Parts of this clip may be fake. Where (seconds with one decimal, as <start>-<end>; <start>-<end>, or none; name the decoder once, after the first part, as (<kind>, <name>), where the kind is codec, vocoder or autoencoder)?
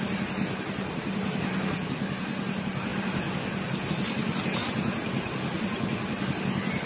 none